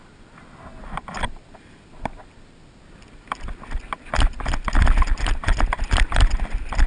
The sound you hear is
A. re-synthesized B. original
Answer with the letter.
B